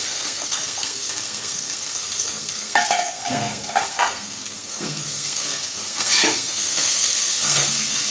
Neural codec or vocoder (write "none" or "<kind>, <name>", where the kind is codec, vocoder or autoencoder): codec, SNAC